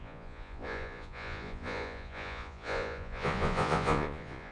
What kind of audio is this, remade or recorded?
remade